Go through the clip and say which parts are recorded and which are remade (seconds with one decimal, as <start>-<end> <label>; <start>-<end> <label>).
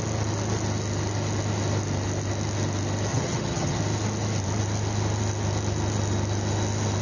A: 0.0-3.1 recorded; 3.1-3.8 remade; 3.8-7.0 recorded